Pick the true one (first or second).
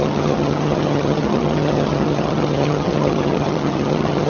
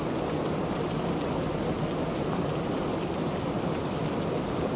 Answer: second